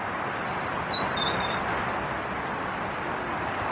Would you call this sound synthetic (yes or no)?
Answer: no